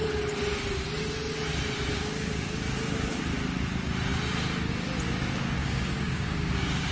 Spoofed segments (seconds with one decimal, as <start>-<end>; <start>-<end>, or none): 1.9-3.2; 5.6-6.9